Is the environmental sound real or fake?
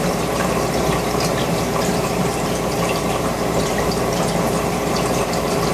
fake